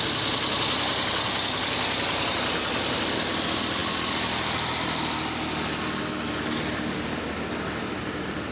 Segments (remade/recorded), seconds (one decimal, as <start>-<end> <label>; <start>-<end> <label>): 0.0-8.5 recorded